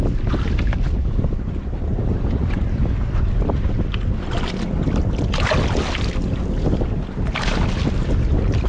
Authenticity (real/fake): real